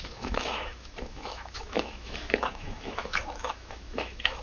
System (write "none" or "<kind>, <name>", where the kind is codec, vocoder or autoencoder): autoencoder, DAC-VAE